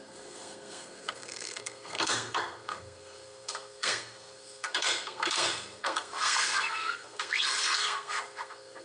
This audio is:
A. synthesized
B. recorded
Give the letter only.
A